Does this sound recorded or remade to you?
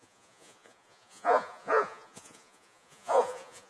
remade